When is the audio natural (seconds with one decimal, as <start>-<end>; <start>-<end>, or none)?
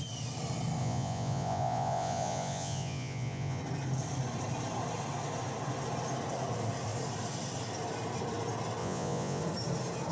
0.0-0.8; 3.6-8.8; 9.4-10.1